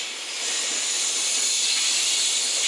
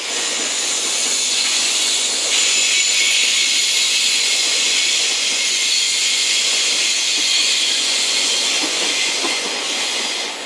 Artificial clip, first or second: second